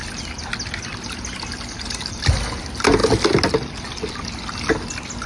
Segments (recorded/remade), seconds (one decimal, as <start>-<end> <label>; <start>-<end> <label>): 0.0-5.3 recorded